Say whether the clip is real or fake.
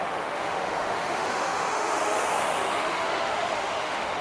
fake